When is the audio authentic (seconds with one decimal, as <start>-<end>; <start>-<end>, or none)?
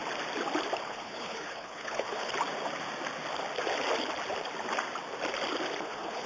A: 0.0-0.8; 2.3-5.8